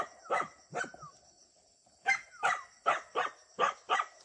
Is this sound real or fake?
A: real